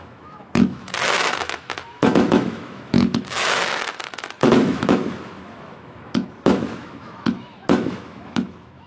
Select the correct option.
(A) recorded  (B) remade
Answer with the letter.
B